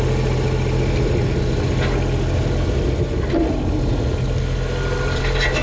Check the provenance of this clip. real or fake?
real